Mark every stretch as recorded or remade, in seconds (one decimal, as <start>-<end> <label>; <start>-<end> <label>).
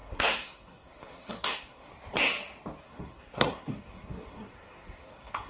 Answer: 0.0-1.9 remade; 1.9-2.8 recorded; 2.8-5.5 remade